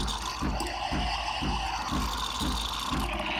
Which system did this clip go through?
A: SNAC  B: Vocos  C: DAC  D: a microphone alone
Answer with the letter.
D